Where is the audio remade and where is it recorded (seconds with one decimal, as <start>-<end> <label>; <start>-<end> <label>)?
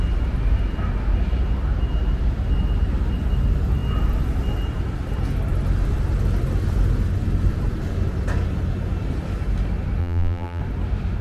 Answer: 0.0-10.0 recorded; 10.0-10.6 remade; 10.6-11.2 recorded